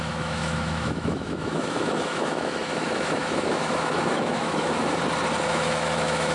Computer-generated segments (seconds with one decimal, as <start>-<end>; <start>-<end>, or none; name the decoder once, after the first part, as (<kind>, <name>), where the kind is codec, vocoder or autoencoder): 0.0-4.8 (autoencoder, DAC-VAE); 5.5-6.3